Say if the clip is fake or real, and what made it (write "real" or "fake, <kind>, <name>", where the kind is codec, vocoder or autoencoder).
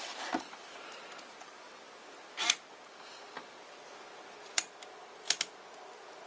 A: real